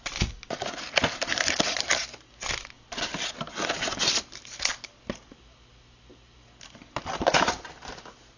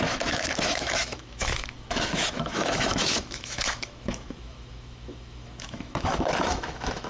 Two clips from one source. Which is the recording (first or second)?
first